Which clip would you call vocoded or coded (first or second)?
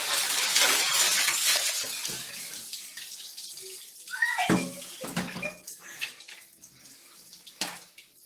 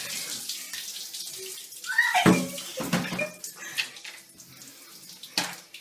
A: first